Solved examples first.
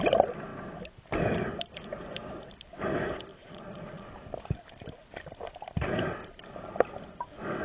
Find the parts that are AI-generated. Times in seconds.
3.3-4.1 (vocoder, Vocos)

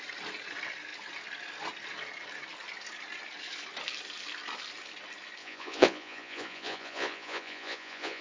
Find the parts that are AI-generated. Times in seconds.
5.4-8.2 (vocoder, Vocos)

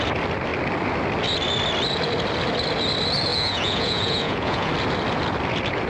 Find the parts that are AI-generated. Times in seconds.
3.3-4.7 (vocoder, Vocos)

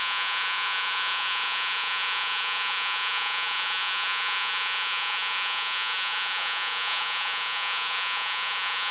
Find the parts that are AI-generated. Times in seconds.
0.0-8.9 (vocoder, Vocos)

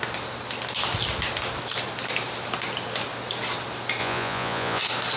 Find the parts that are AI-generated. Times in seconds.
4.0-4.8 (vocoder, Vocos)

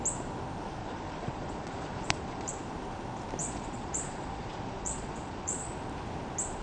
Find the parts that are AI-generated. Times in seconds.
0.8-2.5 (vocoder, Vocos); 3.4-5.7

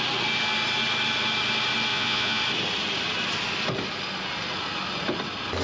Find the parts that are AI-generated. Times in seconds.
1.9-2.4 (vocoder, Vocos)

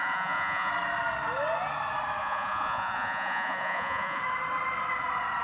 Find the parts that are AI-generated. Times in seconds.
0.0-0.7 (vocoder, Vocos); 2.2-4.2